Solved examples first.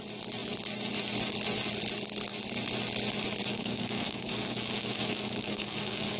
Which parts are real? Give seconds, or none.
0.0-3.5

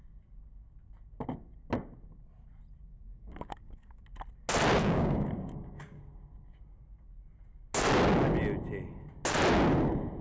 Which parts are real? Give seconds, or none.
0.0-2.9; 4.0-4.8; 6.0-10.2

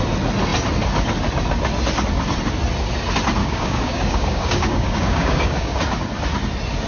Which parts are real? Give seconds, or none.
0.0-3.4; 5.8-6.9

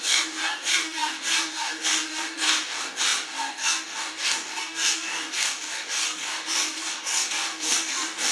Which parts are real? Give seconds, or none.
none

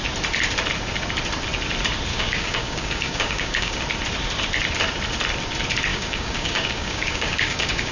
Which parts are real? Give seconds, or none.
0.0-2.1; 3.8-5.9